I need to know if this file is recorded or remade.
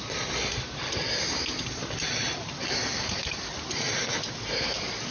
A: recorded